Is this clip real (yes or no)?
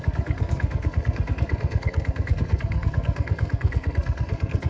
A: no